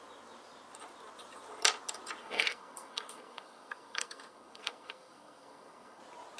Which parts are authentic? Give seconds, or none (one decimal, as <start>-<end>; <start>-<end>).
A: 0.0-2.2; 6.0-6.4